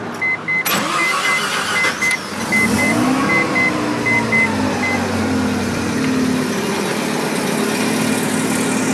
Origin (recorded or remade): recorded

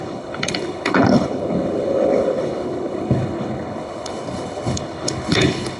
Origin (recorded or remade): remade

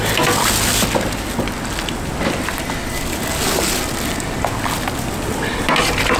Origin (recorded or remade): recorded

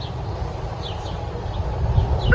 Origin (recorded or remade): recorded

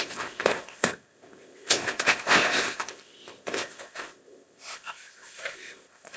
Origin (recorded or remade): remade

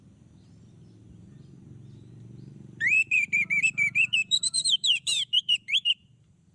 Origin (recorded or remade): remade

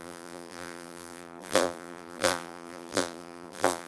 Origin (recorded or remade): remade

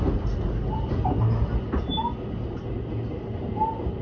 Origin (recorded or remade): recorded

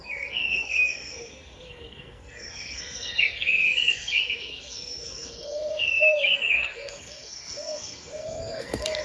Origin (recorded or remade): remade